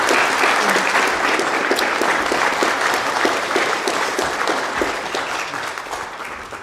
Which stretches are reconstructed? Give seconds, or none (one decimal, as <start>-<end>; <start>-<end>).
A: none

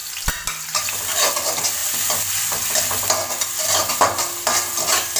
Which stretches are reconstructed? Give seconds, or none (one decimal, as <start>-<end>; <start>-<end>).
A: none